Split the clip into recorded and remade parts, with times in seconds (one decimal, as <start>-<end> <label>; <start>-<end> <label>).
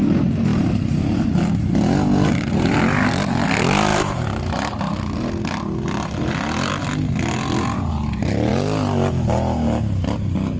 0.0-0.5 recorded; 0.5-1.4 remade; 1.4-3.9 recorded; 3.9-4.8 remade; 4.8-10.6 recorded